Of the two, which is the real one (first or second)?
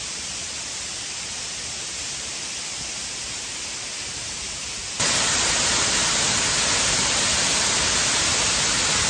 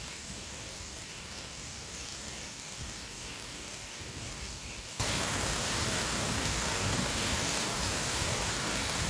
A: first